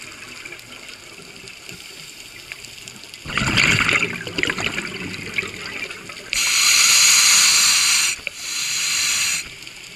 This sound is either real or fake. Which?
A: real